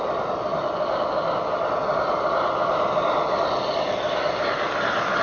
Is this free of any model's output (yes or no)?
yes